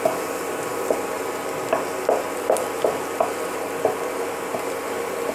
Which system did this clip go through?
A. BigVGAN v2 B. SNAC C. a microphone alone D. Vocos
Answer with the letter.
C